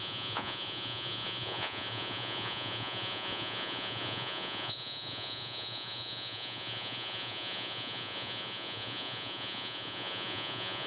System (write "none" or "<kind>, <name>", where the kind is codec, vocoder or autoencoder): vocoder, Vocos